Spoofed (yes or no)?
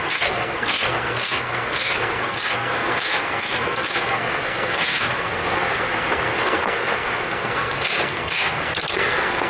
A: yes